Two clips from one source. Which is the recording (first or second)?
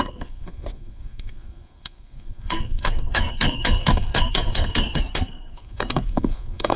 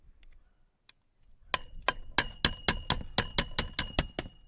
second